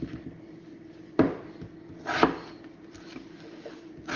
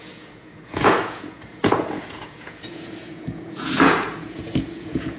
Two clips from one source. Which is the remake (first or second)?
second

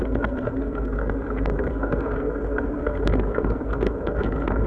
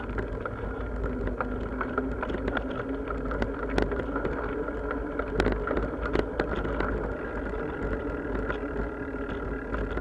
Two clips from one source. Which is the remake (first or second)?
first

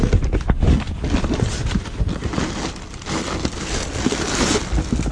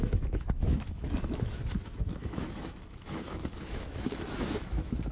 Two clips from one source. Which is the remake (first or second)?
second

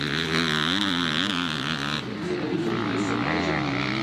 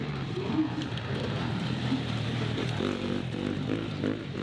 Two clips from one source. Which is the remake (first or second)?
second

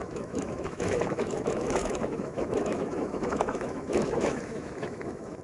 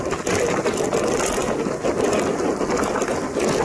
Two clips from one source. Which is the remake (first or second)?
first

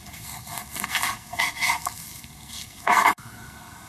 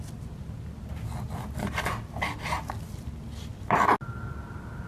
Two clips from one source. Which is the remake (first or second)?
first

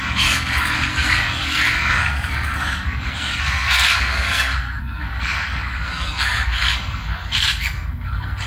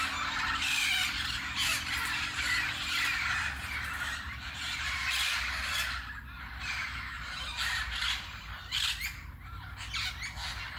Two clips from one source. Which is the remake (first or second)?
first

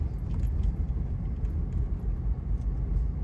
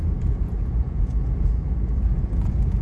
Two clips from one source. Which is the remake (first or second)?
second